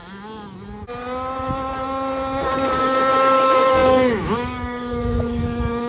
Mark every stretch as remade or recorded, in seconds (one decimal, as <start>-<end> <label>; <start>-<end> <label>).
0.0-2.8 recorded; 2.8-5.9 remade